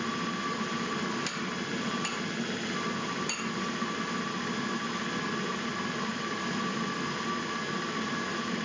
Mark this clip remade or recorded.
recorded